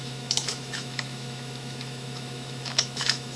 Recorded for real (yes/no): no